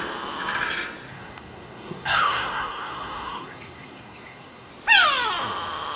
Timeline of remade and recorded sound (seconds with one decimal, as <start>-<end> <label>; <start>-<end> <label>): 0.0-1.1 recorded; 1.1-4.7 remade; 4.7-6.0 recorded